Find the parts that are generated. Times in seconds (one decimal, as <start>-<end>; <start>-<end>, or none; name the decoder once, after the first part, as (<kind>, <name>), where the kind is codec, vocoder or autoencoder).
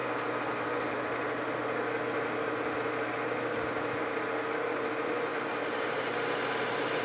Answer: none